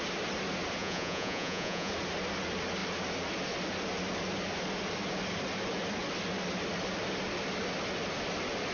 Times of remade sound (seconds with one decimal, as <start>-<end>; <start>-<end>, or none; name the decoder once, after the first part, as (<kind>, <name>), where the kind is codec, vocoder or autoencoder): 0.8-1.9 (vocoder, Vocos)